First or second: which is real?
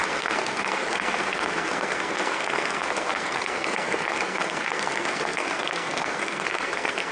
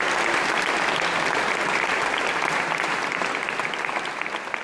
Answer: second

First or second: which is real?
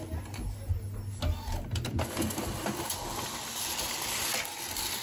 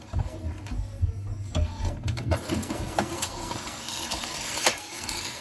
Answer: first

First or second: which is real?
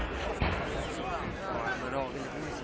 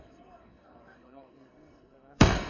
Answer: first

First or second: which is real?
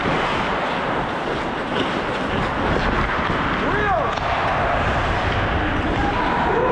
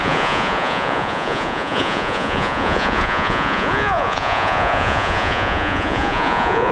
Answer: first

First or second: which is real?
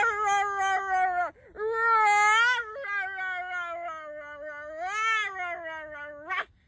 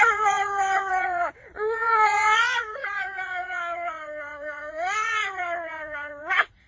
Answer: first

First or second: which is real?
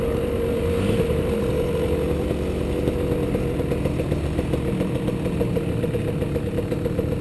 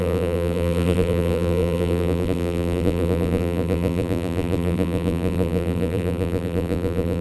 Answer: first